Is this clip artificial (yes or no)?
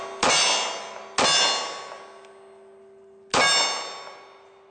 no